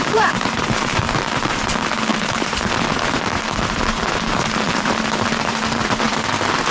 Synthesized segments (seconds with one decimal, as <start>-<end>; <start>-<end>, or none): 0.0-1.7; 2.1-6.1